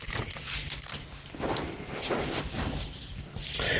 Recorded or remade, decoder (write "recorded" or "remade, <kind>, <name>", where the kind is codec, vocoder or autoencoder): remade, vocoder, BigVGAN v2